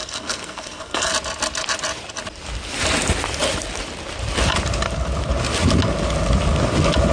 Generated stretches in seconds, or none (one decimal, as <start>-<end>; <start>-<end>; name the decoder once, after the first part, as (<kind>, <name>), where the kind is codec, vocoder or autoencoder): 0.0-1.1 (codec, SNAC)